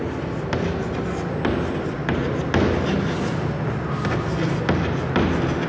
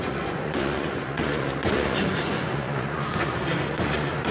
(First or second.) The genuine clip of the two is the first